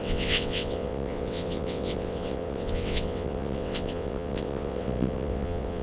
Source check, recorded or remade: remade